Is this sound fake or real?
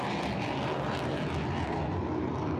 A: real